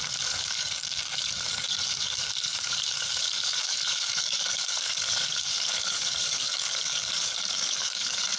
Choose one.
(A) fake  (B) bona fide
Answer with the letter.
A